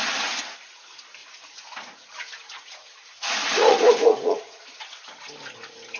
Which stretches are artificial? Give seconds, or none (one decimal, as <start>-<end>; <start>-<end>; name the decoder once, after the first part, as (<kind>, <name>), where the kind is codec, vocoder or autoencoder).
1.2-4.6 (vocoder, Vocos)